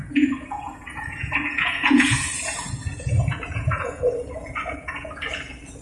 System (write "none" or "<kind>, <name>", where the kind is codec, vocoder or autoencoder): vocoder, Vocos